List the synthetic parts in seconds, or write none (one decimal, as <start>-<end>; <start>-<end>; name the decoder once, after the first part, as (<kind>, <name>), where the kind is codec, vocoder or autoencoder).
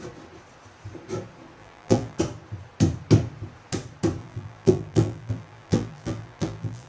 1.6-2.2 (vocoder, BigVGAN v2); 4.2-6.9